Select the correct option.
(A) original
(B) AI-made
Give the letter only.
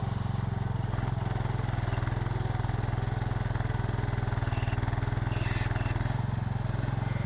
A